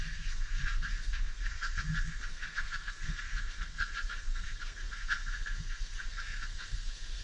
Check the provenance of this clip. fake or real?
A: fake